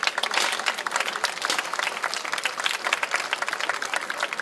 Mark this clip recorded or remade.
recorded